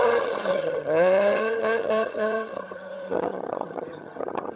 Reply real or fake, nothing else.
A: fake